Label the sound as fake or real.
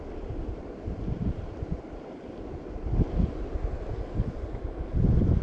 real